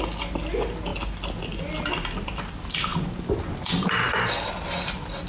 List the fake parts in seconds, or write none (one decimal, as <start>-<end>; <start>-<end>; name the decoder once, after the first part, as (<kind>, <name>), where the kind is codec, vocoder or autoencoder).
none